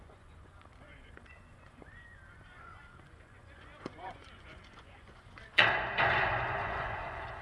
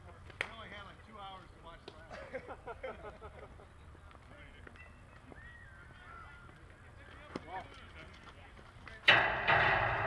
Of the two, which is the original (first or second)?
second